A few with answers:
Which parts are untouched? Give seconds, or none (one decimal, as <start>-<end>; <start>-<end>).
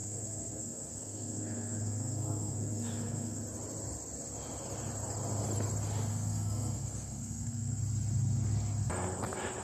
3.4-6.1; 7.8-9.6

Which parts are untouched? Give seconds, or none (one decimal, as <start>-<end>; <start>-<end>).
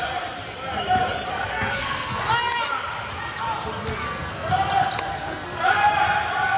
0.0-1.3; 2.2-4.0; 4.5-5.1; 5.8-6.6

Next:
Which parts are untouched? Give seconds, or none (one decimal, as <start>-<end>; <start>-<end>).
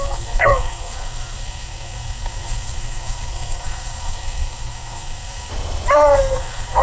5.5-6.2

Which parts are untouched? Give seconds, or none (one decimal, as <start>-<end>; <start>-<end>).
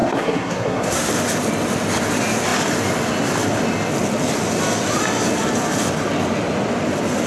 1.1-7.3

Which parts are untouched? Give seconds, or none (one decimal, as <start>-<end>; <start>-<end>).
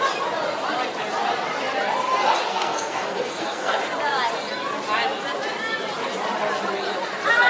0.0-2.5; 3.8-7.5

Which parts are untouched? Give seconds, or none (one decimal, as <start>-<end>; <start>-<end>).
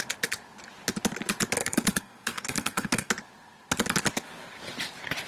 0.0-1.6; 3.1-5.3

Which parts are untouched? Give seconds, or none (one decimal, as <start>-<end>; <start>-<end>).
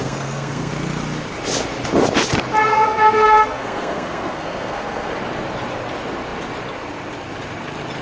0.7-2.7; 5.1-8.0